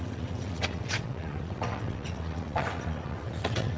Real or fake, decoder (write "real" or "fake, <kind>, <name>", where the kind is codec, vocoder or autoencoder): fake, vocoder, WaveNeXt